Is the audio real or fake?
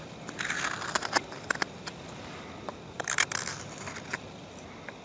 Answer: real